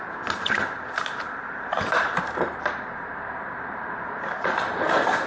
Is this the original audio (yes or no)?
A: no